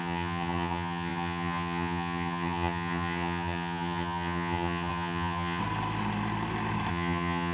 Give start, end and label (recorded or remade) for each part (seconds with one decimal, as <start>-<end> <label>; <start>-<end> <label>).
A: 0.0-5.6 remade; 5.6-6.9 recorded; 6.9-7.5 remade